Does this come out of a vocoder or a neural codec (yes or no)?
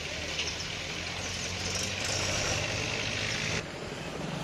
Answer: yes